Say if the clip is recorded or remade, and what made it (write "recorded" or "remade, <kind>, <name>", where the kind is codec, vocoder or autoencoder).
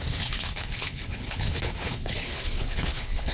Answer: remade, codec, HILCodec